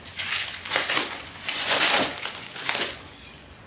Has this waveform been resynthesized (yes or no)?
yes